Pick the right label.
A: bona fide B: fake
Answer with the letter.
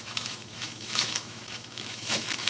B